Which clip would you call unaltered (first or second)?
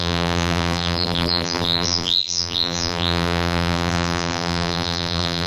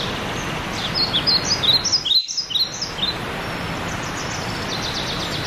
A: second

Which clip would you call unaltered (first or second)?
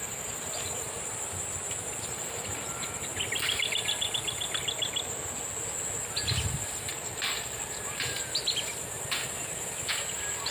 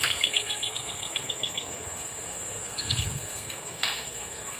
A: first